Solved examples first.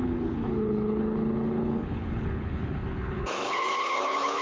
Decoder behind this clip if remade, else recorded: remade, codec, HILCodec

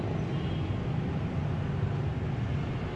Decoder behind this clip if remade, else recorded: recorded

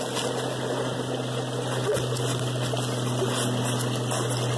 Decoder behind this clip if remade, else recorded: recorded